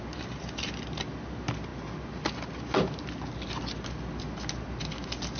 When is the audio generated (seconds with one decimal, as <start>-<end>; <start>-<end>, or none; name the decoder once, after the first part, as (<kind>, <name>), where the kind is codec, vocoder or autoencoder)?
none